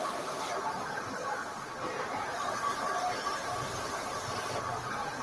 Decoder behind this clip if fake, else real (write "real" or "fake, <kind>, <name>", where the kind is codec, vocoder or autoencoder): fake, vocoder, BigVGAN v2